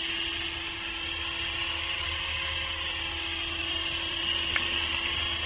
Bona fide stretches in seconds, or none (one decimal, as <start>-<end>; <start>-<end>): 0.0-1.6; 4.9-5.5